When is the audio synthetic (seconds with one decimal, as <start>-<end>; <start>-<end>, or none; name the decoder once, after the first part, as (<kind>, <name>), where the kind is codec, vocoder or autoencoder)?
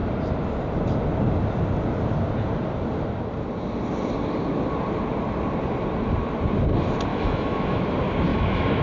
7.1-7.8 (autoencoder, DAC-VAE); 8.3-8.8